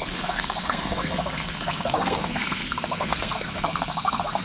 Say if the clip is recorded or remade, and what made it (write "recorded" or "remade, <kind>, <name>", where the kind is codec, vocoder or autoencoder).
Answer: remade, codec, SNAC